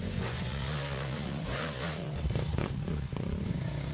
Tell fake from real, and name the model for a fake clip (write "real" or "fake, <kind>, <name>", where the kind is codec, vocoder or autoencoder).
fake, vocoder, Vocos